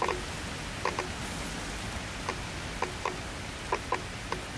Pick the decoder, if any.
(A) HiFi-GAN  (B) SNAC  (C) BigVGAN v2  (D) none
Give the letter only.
D